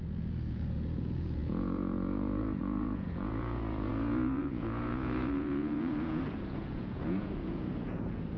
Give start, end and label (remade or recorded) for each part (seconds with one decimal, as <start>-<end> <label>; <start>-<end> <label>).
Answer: 0.0-8.4 remade

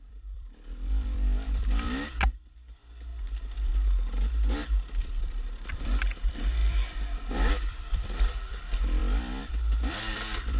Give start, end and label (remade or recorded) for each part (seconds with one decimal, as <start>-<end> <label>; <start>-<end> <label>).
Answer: 0.0-3.1 remade; 3.1-5.0 recorded; 5.0-9.0 remade; 9.0-9.5 recorded; 9.5-10.6 remade

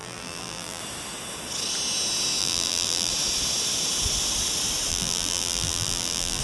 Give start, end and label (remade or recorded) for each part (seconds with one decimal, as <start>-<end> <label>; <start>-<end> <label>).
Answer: 0.0-0.8 remade; 0.8-2.4 recorded; 2.4-3.1 remade; 3.1-4.9 recorded; 4.9-6.4 remade

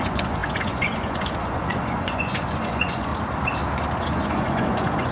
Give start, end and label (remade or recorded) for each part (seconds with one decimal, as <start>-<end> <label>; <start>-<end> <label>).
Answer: 0.0-3.1 remade; 3.1-4.0 recorded; 4.0-5.1 remade

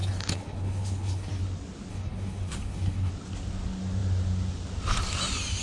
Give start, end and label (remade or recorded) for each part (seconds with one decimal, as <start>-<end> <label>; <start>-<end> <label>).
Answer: 0.0-1.4 remade; 1.4-1.9 recorded; 1.9-3.1 remade; 3.1-5.6 recorded

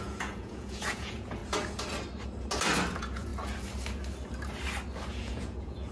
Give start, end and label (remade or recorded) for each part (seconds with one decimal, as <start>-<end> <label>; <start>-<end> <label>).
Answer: 0.0-1.4 remade; 1.4-2.9 recorded; 2.9-3.3 remade; 3.3-5.1 recorded; 5.1-5.9 remade

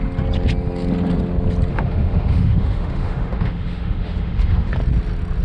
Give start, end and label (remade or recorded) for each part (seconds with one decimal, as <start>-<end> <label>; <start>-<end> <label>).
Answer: 0.0-1.7 recorded; 1.7-4.7 remade; 4.7-5.4 recorded

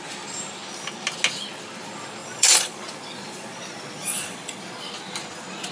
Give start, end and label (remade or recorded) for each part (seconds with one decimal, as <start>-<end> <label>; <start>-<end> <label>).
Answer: 0.0-2.2 recorded; 2.2-4.8 remade; 4.8-5.7 recorded